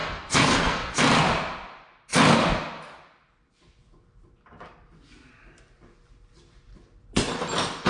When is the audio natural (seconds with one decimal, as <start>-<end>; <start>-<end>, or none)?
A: 0.9-7.9